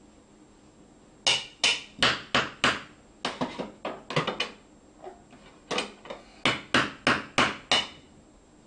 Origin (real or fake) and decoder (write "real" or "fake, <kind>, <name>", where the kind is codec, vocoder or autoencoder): real